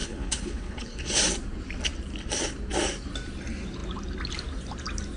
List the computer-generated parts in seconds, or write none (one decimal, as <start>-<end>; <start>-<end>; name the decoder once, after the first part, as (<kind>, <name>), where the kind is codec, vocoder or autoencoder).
0.0-1.2 (codec, HILCodec)